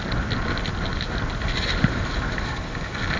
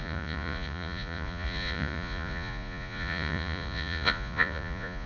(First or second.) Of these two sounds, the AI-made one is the second